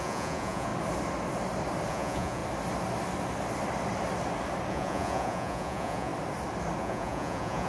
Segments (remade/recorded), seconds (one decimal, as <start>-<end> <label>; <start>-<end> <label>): 0.0-0.7 remade; 0.7-1.9 recorded; 1.9-2.4 remade; 2.4-4.7 recorded; 4.7-6.1 remade; 6.1-6.8 recorded; 6.8-7.7 remade